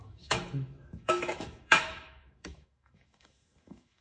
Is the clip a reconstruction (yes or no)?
yes